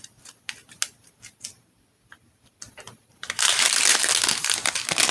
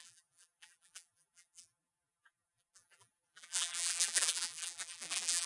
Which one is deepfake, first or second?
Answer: second